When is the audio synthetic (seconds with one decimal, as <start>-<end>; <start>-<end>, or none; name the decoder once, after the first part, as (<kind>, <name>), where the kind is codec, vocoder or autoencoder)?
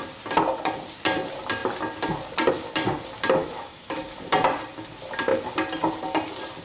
3.4-4.0 (autoencoder, DAC-VAE)